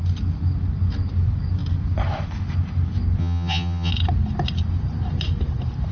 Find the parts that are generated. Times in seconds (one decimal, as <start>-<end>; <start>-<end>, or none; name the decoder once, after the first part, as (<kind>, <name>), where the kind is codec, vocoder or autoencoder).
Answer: 3.2-3.9 (vocoder, HiFi-GAN)